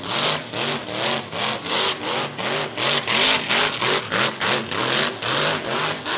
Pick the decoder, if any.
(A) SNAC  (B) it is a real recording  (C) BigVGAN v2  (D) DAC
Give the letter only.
B